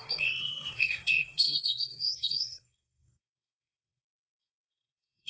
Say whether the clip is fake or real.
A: fake